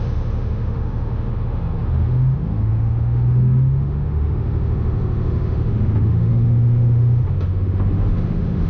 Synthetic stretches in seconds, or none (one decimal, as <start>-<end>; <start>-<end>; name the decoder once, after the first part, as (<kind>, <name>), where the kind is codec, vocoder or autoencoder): 0.0-8.7 (autoencoder, DAC-VAE)